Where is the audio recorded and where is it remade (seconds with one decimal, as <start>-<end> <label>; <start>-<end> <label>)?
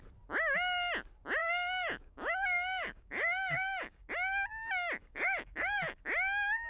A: 0.0-1.4 recorded; 1.4-4.1 remade; 4.1-5.0 recorded; 5.0-6.0 remade; 6.0-6.7 recorded